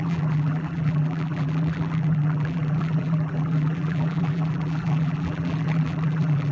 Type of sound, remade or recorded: remade